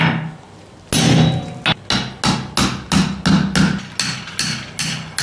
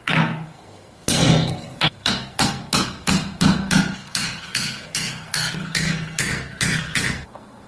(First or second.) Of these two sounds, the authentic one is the first